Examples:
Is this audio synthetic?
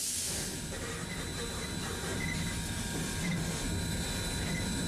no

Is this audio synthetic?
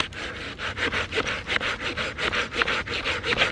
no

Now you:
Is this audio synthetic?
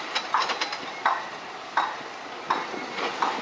no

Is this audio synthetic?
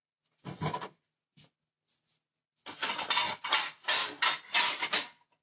no